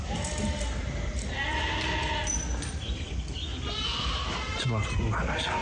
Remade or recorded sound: recorded